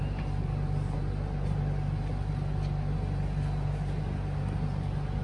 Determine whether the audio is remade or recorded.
recorded